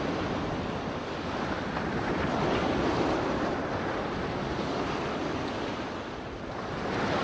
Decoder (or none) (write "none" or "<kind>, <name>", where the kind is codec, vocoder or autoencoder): none